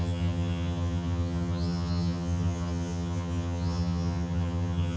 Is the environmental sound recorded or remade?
remade